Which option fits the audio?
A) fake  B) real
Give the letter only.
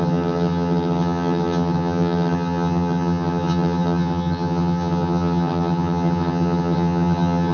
A